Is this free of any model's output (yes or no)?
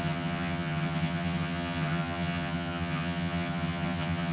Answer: no